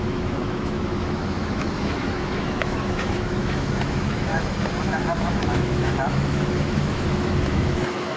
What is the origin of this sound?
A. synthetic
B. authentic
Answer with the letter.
A